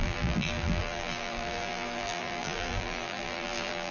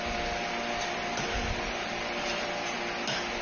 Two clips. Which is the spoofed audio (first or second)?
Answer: first